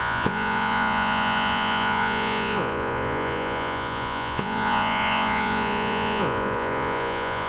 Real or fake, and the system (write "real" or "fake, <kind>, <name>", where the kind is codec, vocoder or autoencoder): fake, vocoder, Vocos